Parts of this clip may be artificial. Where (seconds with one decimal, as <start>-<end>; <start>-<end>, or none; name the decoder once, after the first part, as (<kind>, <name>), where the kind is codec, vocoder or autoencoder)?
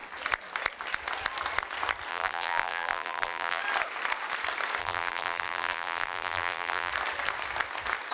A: 2.1-3.6 (vocoder, BigVGAN v2); 4.8-6.9